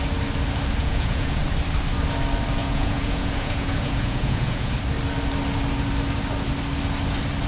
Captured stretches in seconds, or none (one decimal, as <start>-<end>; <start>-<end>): 0.0-0.8; 1.4-2.6; 4.7-7.5